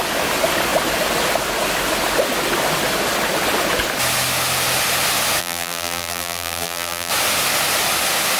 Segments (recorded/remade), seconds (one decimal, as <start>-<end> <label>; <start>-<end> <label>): 0.0-5.4 recorded; 5.4-7.1 remade; 7.1-8.4 recorded